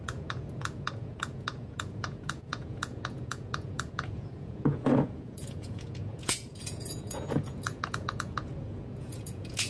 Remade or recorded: remade